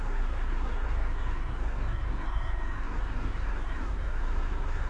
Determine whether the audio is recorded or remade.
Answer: remade